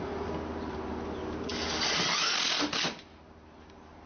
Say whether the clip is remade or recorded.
recorded